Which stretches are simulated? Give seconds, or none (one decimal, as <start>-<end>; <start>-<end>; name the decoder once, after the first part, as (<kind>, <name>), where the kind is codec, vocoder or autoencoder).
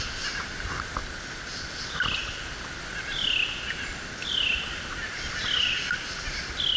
none